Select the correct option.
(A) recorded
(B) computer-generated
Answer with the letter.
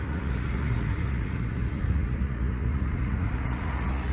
B